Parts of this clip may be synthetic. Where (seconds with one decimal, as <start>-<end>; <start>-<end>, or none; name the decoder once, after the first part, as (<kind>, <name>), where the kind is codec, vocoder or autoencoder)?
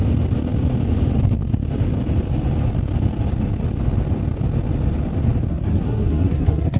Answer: 5.5-6.8 (codec, SNAC)